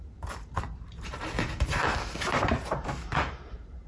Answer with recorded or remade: remade